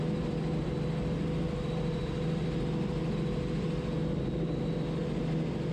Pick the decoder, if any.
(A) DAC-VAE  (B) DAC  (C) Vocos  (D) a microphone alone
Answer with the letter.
D